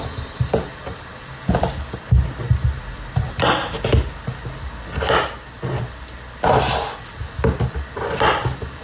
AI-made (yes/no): no